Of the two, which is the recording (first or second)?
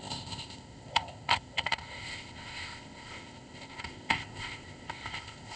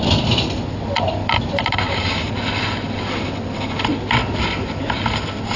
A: second